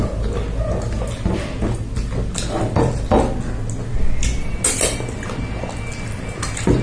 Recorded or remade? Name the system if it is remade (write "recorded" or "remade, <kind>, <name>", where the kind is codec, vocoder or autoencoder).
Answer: recorded